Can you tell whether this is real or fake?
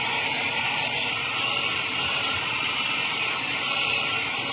fake